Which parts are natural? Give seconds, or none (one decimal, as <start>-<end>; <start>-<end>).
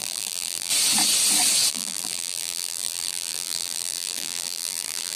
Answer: 0.7-1.7